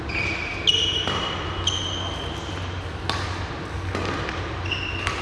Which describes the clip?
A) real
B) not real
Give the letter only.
A